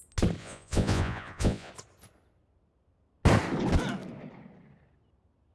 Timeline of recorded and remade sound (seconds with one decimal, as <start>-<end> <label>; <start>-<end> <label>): 0.0-0.4 recorded; 0.4-1.7 remade; 1.7-5.5 recorded